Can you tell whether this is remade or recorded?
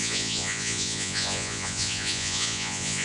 remade